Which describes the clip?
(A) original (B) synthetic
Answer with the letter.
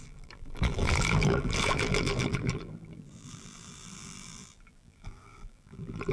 B